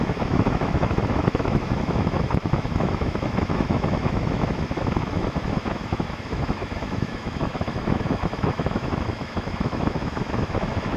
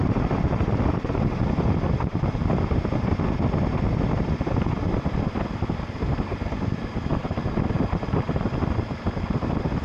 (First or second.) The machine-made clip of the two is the first